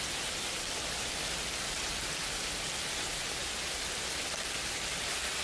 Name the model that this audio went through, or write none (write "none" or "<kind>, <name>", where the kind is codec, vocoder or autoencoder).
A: none